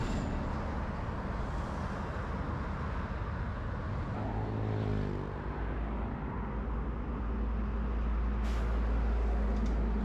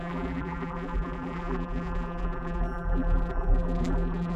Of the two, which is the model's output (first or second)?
second